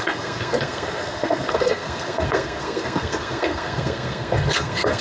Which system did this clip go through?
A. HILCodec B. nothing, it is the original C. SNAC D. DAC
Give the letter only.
C